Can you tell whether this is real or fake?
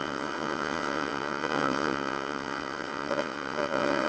fake